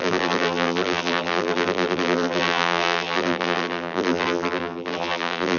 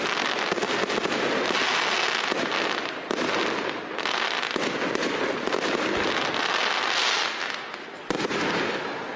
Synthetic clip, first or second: first